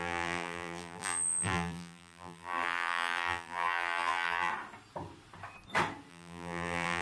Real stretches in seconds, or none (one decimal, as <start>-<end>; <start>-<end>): 4.5-6.1